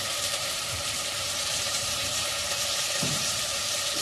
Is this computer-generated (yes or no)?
yes